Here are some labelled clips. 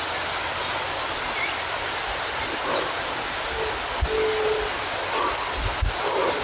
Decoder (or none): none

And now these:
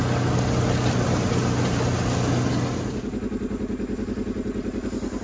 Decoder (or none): none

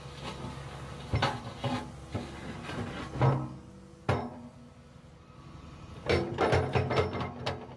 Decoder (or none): none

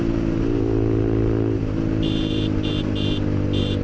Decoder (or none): none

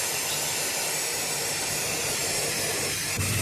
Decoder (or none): vocoder, BigVGAN v2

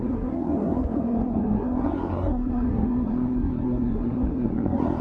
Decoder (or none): codec, SNAC